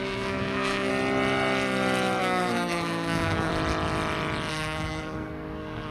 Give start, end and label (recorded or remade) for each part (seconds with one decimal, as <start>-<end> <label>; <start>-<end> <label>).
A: 0.0-0.9 remade; 0.9-2.2 recorded; 2.2-3.5 remade; 3.5-4.5 recorded; 4.5-5.9 remade